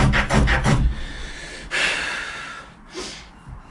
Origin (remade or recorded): recorded